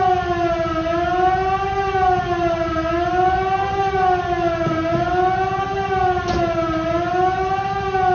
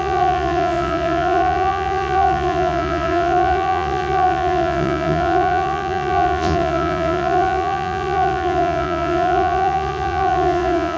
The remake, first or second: second